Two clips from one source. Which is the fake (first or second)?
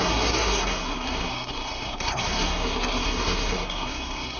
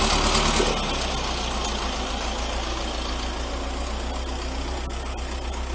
first